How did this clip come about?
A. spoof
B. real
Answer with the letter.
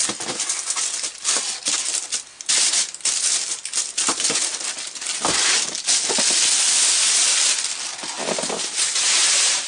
B